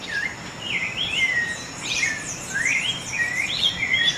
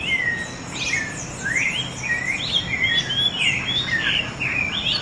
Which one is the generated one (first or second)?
first